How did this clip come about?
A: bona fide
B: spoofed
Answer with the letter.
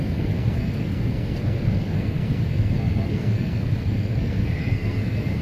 B